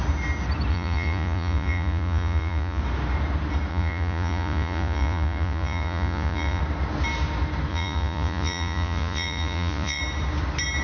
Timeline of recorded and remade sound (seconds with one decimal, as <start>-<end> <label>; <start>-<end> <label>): 0.0-0.7 recorded; 0.7-2.8 remade; 2.8-3.7 recorded; 3.7-6.6 remade; 6.6-7.7 recorded; 7.7-10.0 remade; 10.0-10.8 recorded